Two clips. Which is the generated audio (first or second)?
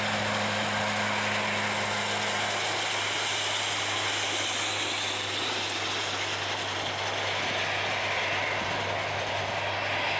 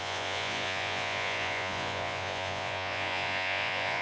second